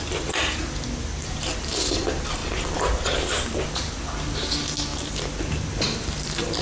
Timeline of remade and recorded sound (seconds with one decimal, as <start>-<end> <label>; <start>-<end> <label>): 0.0-6.6 recorded